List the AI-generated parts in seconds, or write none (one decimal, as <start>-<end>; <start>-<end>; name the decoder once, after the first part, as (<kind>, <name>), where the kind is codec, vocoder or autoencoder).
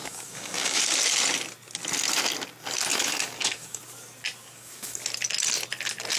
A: 0.0-0.8 (codec, DAC); 2.9-3.8; 4.4-5.0